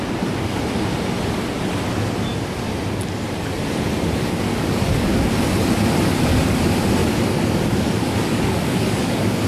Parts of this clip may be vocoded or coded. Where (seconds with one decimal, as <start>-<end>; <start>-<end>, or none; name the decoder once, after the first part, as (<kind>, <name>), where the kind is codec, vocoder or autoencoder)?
4.5-5.3 (codec, DAC); 7.0-9.5